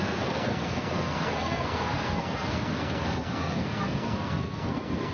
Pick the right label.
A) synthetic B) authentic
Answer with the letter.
A